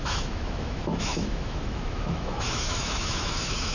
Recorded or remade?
remade